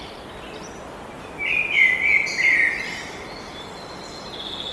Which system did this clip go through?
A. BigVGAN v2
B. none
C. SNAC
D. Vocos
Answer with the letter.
B